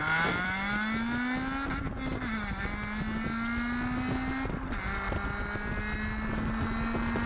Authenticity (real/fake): real